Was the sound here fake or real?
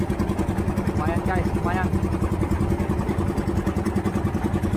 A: real